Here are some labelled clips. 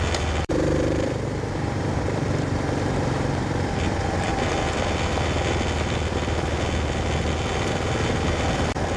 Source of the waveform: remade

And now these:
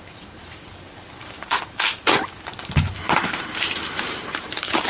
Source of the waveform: remade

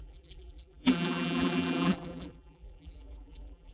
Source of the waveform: remade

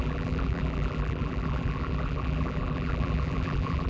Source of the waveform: remade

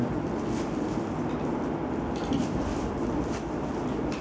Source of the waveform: recorded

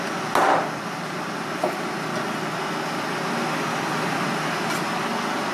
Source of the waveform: recorded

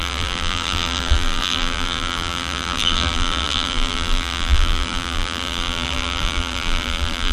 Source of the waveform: remade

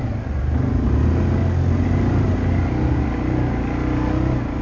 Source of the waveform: recorded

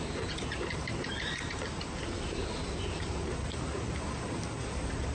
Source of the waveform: remade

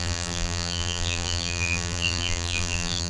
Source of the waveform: remade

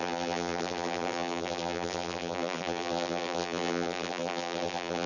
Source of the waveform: remade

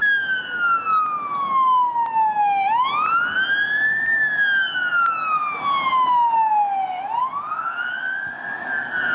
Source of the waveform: recorded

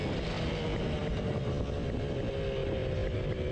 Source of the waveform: recorded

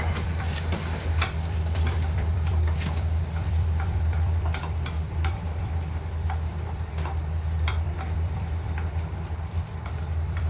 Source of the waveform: remade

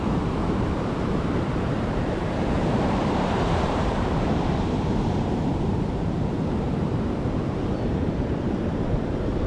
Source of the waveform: remade